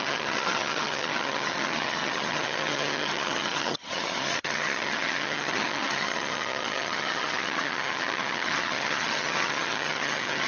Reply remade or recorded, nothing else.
remade